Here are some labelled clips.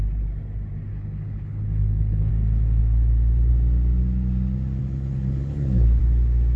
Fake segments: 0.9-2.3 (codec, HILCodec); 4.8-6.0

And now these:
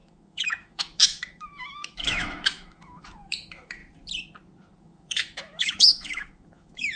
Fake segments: 0.0-3.8 (autoencoder, DAC-VAE); 4.8-7.0

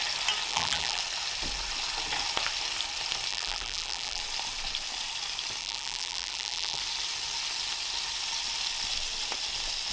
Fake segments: 0.5-1.0 (vocoder, BigVGAN v2); 3.3-4.2; 5.6-6.8